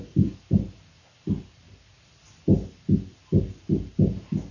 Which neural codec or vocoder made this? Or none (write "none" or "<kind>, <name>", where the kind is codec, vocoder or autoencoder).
none